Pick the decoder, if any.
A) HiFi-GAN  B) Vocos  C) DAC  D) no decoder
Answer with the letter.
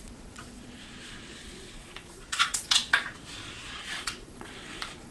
B